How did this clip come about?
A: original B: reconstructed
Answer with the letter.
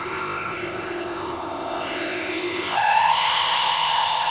B